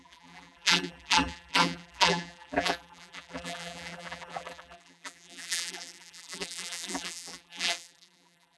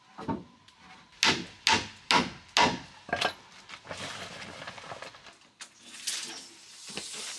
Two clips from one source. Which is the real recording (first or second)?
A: second